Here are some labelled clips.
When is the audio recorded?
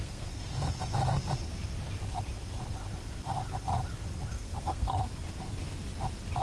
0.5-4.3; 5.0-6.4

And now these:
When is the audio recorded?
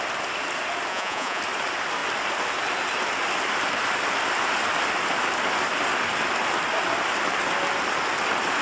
0.0-0.9; 1.4-8.6